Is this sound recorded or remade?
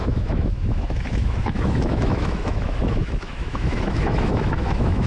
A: remade